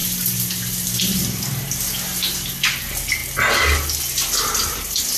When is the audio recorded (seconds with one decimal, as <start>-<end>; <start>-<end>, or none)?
0.0-5.2